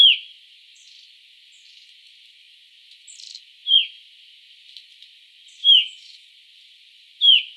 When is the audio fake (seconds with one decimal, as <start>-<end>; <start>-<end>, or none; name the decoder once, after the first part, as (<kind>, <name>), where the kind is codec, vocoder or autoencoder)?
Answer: 5.6-6.3 (autoencoder, DAC-VAE)